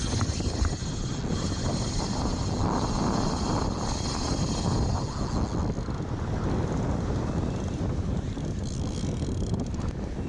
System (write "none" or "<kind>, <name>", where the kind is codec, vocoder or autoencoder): none